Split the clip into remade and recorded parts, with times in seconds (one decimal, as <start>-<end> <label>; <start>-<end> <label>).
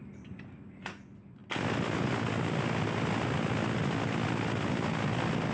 0.0-5.5 recorded